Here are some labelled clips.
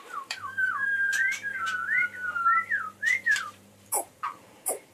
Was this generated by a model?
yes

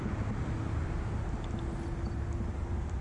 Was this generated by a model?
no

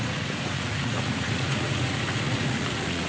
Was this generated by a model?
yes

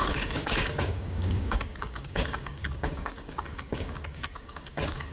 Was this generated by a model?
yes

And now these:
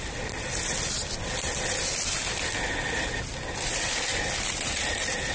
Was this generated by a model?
no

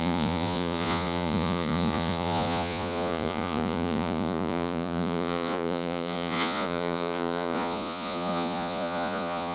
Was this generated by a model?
yes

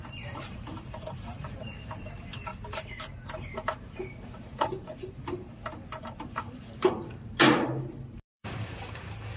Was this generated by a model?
yes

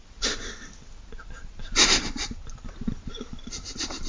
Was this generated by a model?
no